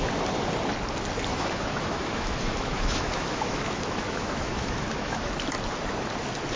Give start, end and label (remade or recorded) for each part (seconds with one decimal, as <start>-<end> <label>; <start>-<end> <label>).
0.0-1.3 recorded; 1.3-5.3 remade; 5.3-6.6 recorded